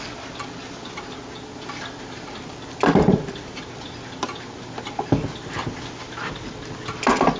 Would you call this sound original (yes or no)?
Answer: yes